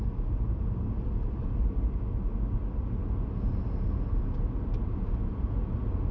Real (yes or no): yes